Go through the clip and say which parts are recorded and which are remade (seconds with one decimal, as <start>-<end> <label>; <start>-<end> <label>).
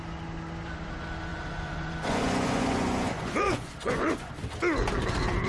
0.0-1.3 recorded; 1.3-4.3 remade; 4.3-5.5 recorded